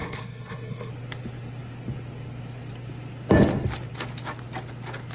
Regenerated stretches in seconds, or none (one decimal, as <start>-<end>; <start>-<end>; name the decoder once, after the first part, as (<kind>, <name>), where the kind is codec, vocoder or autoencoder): 0.0-0.9 (codec, SNAC)